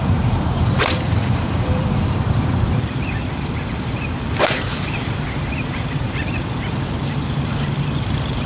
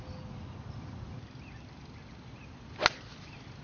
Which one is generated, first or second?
first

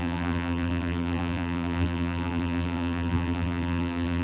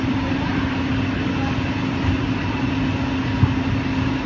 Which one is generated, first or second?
first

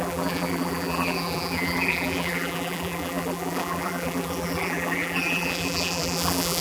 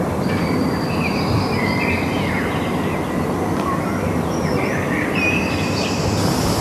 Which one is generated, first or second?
first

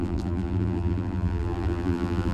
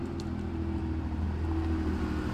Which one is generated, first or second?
first